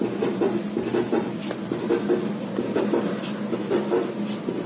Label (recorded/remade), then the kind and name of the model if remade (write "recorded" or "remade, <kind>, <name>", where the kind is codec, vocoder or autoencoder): recorded